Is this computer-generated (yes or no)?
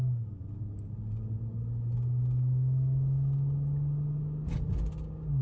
no